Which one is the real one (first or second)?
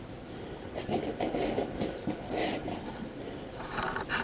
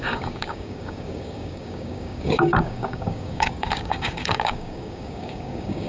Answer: first